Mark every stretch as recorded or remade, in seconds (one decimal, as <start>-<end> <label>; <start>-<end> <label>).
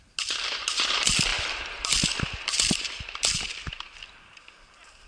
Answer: 0.0-1.3 recorded; 1.3-4.4 remade; 4.4-5.1 recorded